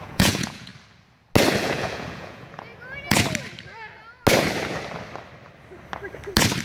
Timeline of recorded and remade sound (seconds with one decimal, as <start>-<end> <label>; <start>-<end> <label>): 0.0-0.7 remade; 0.7-1.6 recorded; 1.6-2.7 remade; 2.7-6.6 recorded